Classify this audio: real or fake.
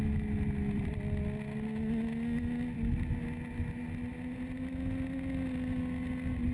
real